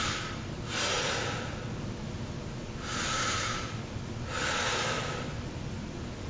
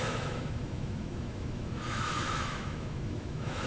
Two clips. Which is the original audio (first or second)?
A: first